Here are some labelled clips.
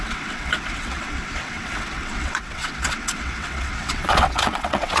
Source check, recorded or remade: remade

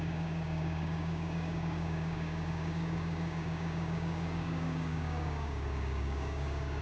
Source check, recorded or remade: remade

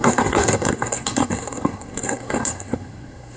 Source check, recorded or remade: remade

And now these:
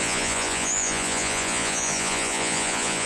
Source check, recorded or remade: remade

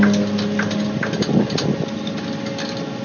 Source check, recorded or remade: recorded